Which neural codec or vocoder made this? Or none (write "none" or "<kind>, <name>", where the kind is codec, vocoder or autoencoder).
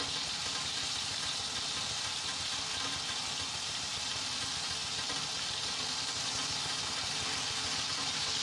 none